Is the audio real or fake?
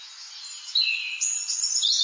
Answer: real